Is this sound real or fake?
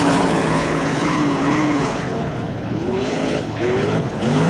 fake